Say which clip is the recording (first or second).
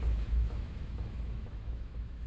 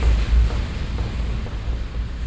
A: second